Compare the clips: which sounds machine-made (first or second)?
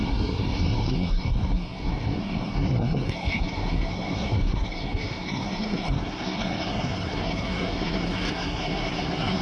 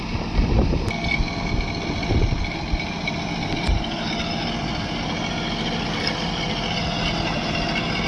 first